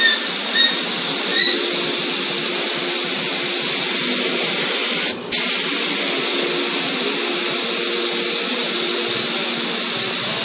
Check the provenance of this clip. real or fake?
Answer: real